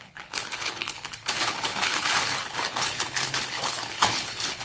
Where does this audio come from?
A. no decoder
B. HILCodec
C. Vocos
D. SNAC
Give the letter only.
B